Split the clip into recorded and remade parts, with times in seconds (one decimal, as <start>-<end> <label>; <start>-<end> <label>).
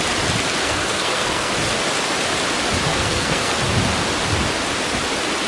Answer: 0.0-0.6 recorded; 0.6-1.5 remade; 1.5-2.9 recorded; 2.9-3.5 remade; 3.5-5.5 recorded